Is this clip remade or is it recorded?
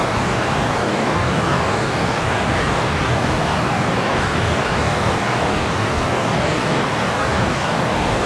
remade